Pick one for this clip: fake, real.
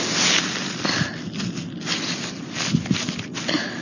real